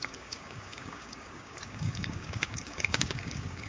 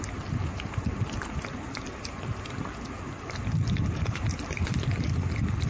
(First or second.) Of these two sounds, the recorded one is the second